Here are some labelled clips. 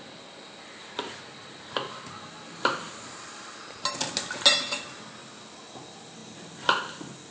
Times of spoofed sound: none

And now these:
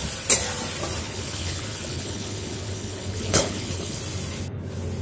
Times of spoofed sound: 1.0-4.0

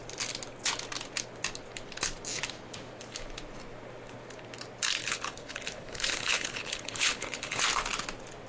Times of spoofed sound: 5.0-7.6